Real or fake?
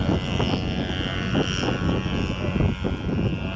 real